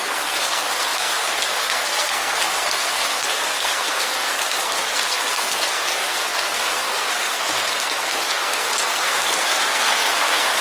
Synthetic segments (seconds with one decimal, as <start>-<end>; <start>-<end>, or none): 0.0-10.6